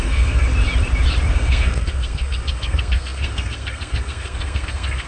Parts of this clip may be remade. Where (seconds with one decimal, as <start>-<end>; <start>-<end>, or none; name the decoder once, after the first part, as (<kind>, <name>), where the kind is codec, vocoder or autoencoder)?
0.0-0.5 (codec, SNAC); 1.3-5.1